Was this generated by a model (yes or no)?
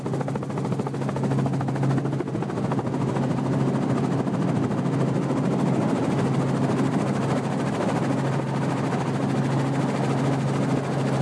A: no